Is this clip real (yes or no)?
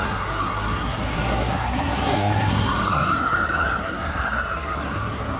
no